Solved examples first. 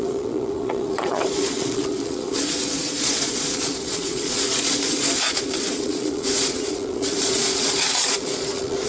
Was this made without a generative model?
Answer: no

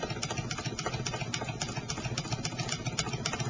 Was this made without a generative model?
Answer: yes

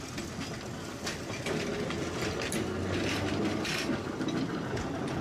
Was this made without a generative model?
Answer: yes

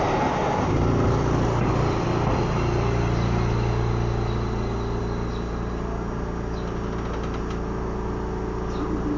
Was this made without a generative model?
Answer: yes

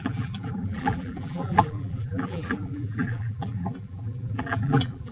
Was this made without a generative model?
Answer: no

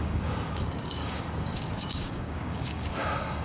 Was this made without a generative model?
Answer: no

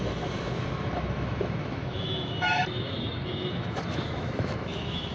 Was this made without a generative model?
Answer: no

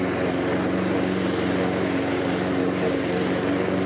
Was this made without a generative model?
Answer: no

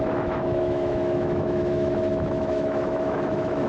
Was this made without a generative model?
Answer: no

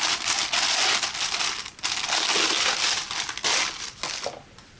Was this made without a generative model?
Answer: yes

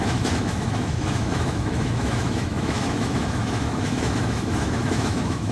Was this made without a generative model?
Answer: no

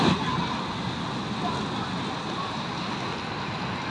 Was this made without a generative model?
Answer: yes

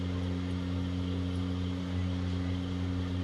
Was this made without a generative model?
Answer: yes